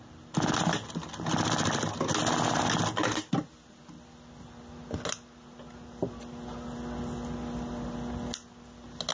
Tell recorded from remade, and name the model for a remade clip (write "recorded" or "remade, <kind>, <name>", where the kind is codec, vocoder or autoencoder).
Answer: recorded